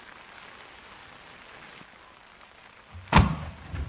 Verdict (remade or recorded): recorded